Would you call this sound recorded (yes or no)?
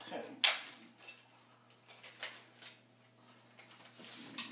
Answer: yes